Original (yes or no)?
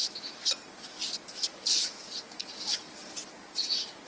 yes